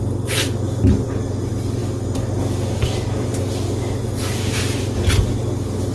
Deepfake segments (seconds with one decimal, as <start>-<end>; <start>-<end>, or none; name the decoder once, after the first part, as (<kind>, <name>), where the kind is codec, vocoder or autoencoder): none